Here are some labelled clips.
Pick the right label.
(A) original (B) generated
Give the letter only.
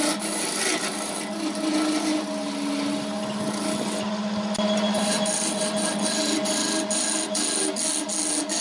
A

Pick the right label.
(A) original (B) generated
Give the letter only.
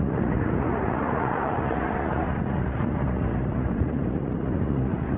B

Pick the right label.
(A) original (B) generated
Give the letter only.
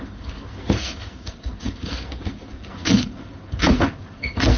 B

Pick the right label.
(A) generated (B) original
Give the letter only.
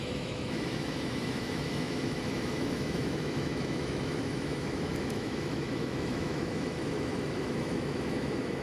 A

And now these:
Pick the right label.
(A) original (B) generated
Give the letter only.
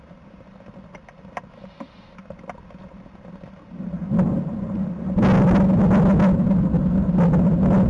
A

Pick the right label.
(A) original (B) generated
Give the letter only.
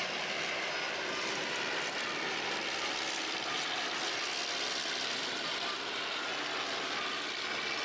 A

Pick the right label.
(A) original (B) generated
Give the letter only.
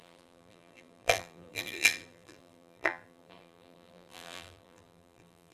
B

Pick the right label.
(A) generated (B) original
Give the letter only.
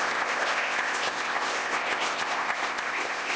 A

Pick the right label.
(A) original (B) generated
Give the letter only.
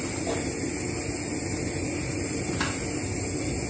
A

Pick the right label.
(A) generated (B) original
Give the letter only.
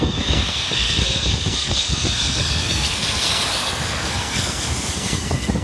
A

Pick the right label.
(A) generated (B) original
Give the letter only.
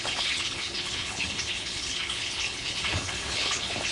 A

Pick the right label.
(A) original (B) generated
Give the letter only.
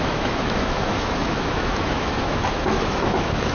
B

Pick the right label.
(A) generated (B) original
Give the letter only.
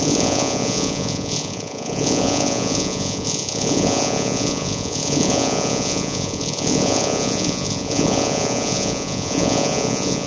A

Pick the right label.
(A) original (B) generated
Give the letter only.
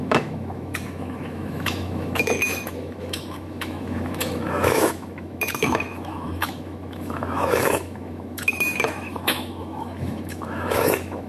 B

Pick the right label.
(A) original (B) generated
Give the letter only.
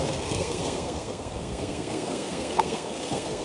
B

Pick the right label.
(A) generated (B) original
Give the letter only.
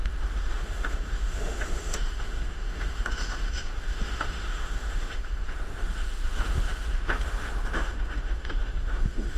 A